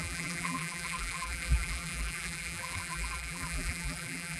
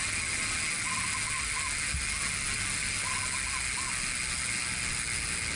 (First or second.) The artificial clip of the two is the first